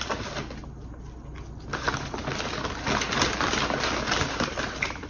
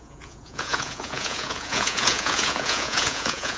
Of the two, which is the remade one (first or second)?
second